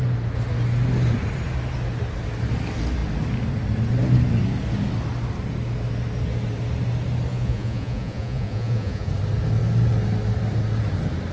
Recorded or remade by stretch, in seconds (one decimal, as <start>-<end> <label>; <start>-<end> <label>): 0.0-7.3 recorded; 7.3-9.1 remade; 9.1-11.3 recorded